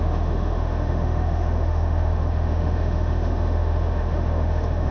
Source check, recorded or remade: remade